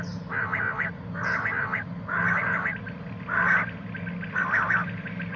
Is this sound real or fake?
real